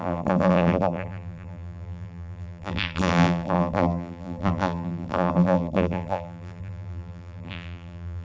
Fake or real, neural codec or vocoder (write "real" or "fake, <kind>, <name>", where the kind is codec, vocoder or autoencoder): fake, vocoder, BigVGAN v2